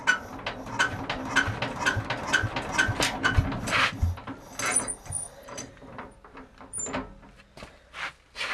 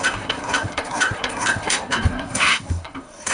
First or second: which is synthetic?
second